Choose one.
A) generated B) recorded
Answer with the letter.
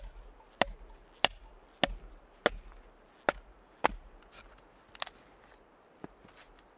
B